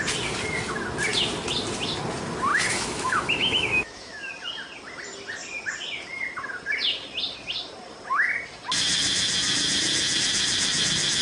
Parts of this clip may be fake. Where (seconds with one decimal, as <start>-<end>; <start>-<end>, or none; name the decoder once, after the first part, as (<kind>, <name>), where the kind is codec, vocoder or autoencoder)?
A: 2.5-4.3 (autoencoder, DAC-VAE)